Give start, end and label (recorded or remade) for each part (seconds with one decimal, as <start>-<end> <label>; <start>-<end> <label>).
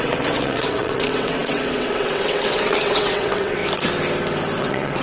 0.0-3.6 remade; 3.6-4.6 recorded; 4.6-5.0 remade